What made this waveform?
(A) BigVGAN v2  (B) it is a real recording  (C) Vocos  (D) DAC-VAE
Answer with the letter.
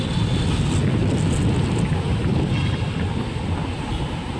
B